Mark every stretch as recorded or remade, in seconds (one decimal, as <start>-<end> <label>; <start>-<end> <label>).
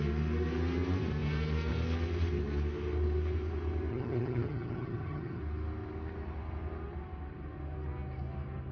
0.0-3.9 recorded; 3.9-5.4 remade; 5.4-8.7 recorded